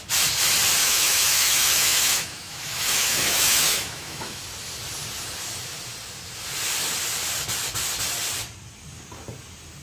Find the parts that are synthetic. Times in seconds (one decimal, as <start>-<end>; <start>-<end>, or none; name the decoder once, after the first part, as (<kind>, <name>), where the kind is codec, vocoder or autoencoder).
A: 0.8-4.4 (autoencoder, DAC-VAE)